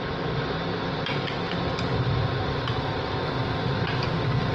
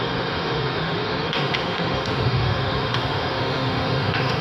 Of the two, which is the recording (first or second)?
first